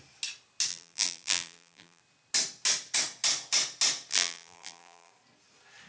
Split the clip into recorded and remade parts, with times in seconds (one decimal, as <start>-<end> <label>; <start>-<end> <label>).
0.0-0.7 recorded; 0.7-2.0 remade; 2.0-4.1 recorded; 4.1-5.1 remade; 5.1-5.9 recorded